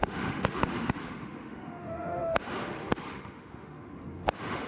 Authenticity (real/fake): fake